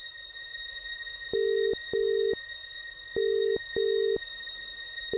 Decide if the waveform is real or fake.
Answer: real